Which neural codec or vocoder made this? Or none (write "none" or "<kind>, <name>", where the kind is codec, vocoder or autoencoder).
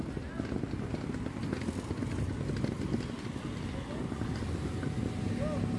none